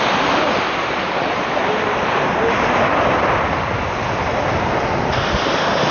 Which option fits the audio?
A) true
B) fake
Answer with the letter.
A